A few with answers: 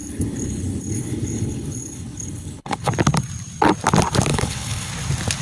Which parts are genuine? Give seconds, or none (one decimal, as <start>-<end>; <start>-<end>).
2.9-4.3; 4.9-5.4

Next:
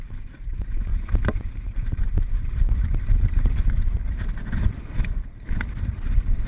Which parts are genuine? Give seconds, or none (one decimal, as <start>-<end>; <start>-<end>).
0.0-0.9; 4.3-6.5

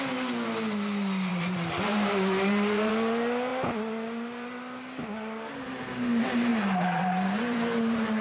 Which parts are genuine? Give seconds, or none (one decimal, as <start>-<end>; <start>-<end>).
0.0-1.3; 2.9-6.5

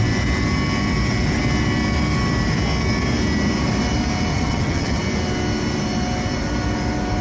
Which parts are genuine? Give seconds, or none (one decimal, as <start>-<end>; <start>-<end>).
0.0-4.3; 5.0-7.2

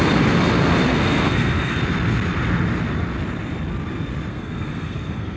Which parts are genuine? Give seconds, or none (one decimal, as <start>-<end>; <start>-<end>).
0.0-0.9; 1.8-4.3

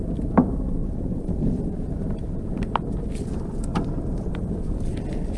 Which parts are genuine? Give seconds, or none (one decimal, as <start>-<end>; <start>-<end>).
0.0-0.8; 2.4-3.7; 4.4-5.4

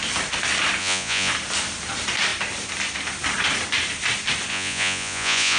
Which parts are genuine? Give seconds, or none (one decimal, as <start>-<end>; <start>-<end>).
0.0-0.8; 1.3-4.5